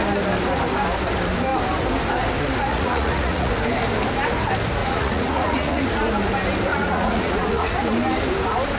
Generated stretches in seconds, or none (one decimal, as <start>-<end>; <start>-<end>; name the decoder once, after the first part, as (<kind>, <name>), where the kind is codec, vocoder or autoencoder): 2.7-3.5 (vocoder, Vocos); 4.8-5.8; 6.7-7.7